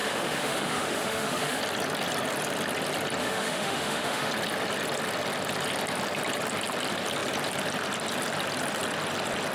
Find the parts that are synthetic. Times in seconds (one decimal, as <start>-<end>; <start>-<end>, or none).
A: 0.0-1.6; 3.2-4.3